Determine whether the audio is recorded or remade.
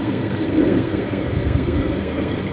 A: remade